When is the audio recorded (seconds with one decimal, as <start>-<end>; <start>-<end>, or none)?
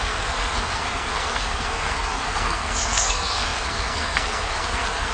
none